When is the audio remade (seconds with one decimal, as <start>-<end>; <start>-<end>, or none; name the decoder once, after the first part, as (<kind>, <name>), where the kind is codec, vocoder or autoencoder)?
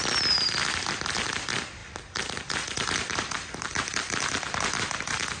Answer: 1.8-5.0 (vocoder, BigVGAN v2)